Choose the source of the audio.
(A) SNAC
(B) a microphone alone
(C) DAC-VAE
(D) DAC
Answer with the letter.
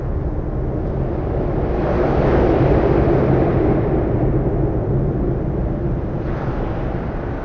B